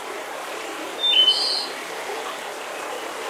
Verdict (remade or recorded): recorded